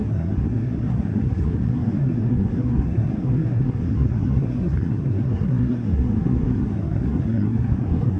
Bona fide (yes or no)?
no